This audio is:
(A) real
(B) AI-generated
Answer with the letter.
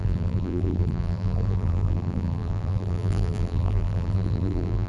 B